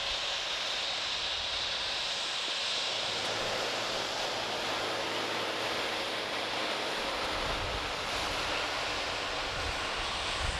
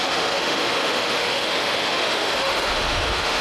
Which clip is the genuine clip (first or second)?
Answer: first